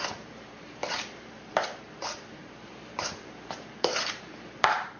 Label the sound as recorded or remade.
remade